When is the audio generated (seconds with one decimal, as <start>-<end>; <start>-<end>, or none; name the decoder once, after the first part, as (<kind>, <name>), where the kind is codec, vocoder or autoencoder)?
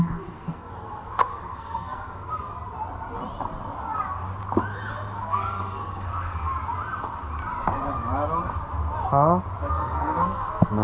0.0-2.5 (codec, SNAC); 5.2-6.5; 9.7-10.8